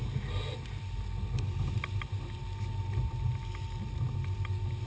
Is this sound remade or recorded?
recorded